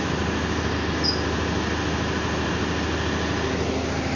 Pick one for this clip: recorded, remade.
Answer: recorded